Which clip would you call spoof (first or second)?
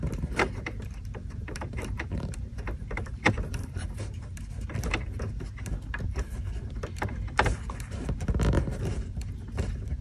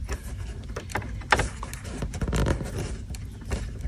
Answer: first